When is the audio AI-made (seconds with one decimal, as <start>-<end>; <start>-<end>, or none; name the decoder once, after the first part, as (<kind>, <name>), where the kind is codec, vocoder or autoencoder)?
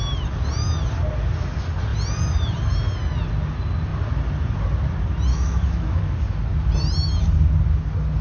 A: 5.3-6.0 (autoencoder, DAC-VAE)